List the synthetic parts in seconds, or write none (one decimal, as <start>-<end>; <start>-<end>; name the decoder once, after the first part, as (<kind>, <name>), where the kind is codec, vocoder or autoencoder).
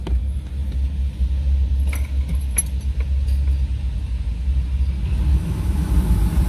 5.3-5.9 (autoencoder, DAC-VAE)